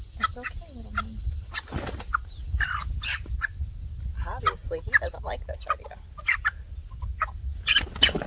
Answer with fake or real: real